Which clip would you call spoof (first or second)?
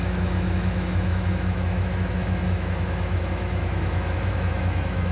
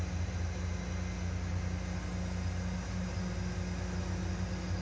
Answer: first